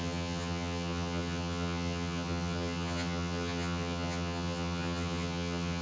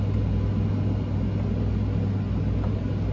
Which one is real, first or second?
second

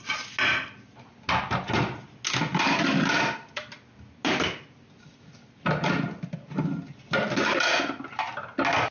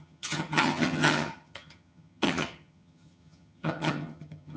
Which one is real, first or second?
first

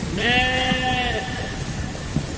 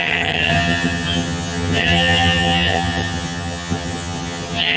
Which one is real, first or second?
first